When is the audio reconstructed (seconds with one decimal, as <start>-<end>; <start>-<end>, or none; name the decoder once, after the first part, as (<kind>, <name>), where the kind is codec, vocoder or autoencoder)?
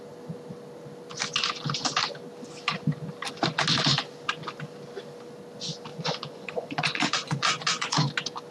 5.9-8.1 (vocoder, Vocos)